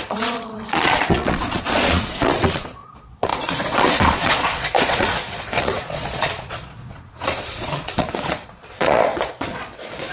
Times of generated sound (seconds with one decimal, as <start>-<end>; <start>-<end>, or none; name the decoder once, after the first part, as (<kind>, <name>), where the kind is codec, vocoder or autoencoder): 0.0-10.1 (vocoder, Vocos)